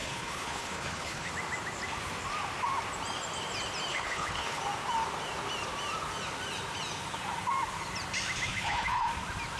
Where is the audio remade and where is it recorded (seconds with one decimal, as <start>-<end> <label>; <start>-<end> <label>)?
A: 0.0-1.3 remade; 1.3-3.9 recorded; 3.9-4.6 remade; 4.6-8.5 recorded; 8.5-9.1 remade; 9.1-9.6 recorded